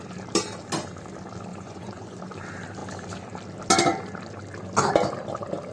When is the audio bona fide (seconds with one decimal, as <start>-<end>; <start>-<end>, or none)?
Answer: 0.0-1.5; 2.2-5.7